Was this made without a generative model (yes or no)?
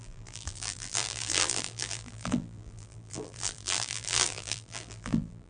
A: no